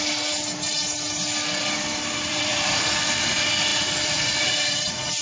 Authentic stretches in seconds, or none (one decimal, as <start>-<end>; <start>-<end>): 0.0-2.3; 2.8-3.7